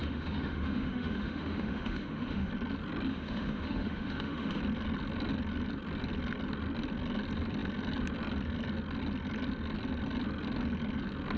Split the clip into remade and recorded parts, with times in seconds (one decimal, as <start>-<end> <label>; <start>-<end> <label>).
0.0-2.5 remade; 2.5-3.1 recorded; 3.1-4.6 remade; 4.6-11.4 recorded